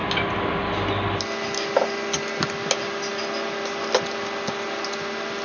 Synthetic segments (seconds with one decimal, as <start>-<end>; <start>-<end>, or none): none